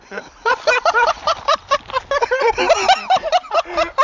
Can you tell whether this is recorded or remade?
recorded